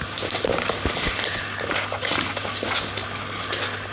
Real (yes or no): yes